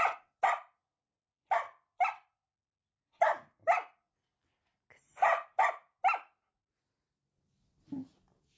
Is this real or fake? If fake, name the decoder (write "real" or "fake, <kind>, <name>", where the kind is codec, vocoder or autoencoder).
real